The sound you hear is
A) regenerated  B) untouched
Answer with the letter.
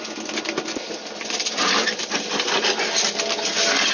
B